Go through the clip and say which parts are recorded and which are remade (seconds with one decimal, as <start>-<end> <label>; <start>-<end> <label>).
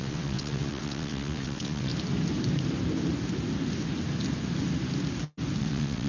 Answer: 0.0-1.9 remade; 1.9-5.6 recorded; 5.6-6.1 remade